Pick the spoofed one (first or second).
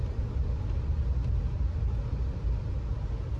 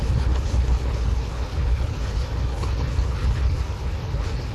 second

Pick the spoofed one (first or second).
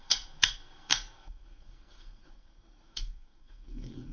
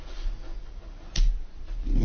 first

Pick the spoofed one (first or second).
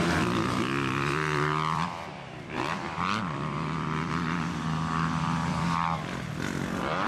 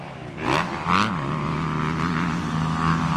first